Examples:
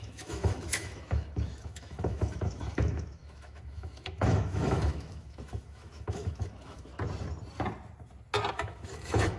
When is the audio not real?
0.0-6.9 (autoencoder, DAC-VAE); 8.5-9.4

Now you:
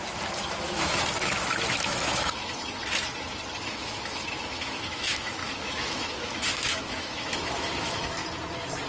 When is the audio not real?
0.0-2.8 (autoencoder, DAC-VAE); 3.6-8.2

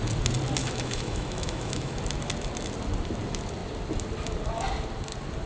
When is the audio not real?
0.6-2.0 (autoencoder, DAC-VAE)

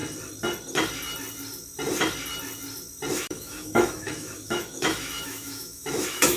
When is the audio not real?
3.1-6.4 (autoencoder, DAC-VAE)

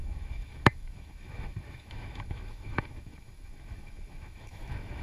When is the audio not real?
0.0-5.0 (autoencoder, DAC-VAE)

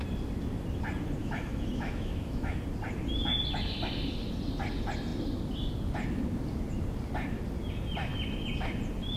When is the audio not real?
1.2-2.6 (autoencoder, DAC-VAE)

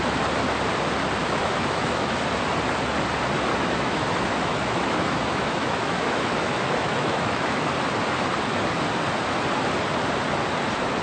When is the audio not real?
1.2-2.2 (autoencoder, DAC-VAE); 3.5-7.7